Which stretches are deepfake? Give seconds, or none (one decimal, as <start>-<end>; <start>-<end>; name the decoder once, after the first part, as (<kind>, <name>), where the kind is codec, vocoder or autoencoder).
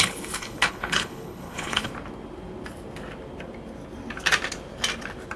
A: 0.0-1.9 (codec, HILCodec)